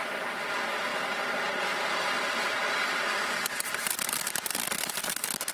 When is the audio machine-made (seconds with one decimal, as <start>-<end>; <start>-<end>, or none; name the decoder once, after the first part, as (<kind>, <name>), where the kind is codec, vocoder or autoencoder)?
none